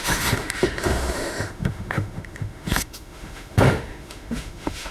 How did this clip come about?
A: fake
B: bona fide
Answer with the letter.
A